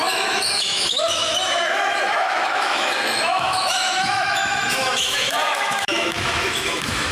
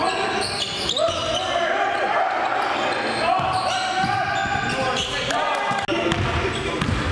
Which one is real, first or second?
second